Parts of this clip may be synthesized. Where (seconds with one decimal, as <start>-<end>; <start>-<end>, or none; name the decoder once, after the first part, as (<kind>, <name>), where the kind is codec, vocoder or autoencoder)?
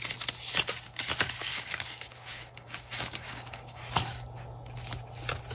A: 1.4-3.8 (codec, DAC)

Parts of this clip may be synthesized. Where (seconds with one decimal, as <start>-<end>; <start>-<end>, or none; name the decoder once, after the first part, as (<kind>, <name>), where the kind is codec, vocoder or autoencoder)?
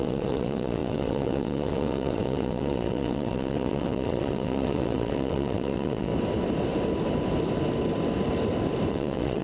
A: 0.0-6.1 (vocoder, WaveNeXt); 8.9-9.4